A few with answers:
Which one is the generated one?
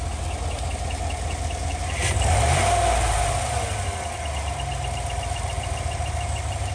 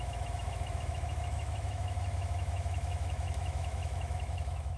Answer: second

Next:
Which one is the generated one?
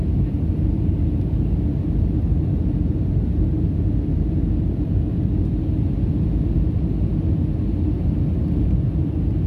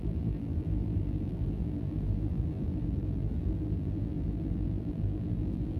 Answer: second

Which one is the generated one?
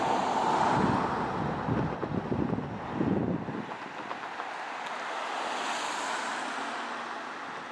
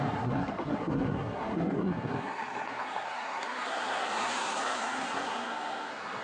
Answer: second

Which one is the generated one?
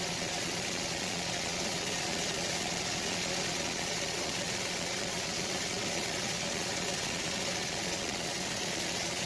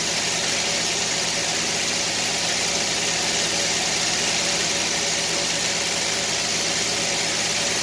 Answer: first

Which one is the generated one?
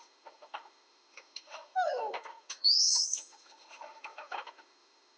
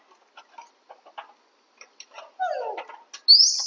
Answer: first